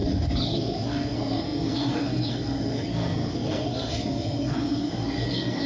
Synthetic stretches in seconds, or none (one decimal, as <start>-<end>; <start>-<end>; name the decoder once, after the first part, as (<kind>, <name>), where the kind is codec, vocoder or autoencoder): 0.5-5.7 (codec, SNAC)